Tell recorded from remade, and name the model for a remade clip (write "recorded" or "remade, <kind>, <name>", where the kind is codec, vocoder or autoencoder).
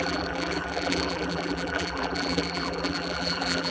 remade, vocoder, BigVGAN v2